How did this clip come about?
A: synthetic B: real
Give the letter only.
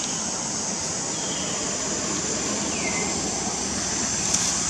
B